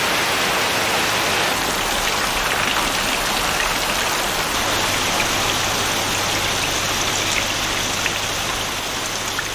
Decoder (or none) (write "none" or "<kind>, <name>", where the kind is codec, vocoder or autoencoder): none